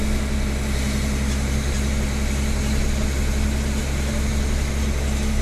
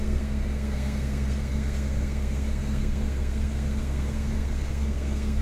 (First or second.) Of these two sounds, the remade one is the second